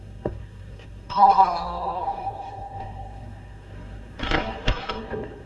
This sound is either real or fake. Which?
fake